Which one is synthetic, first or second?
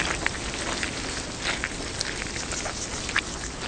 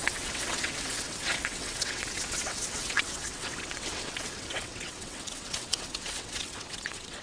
second